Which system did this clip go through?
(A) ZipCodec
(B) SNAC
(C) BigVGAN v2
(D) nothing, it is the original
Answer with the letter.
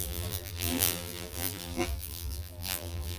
C